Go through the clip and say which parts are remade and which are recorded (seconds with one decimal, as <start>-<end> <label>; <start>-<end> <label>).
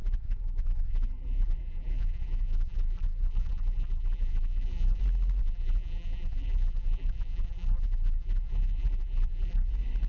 0.0-5.0 remade; 5.0-5.4 recorded; 5.4-9.7 remade; 9.7-10.1 recorded